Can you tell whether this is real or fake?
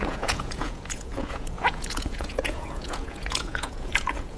fake